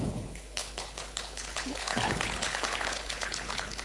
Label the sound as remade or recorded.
remade